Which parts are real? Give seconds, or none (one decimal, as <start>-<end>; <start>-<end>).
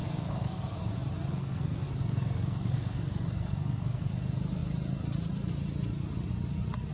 0.9-1.3; 4.1-6.9